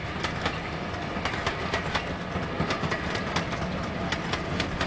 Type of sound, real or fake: real